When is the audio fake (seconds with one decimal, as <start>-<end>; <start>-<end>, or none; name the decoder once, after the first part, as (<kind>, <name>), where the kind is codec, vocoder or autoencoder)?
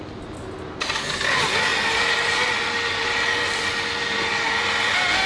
none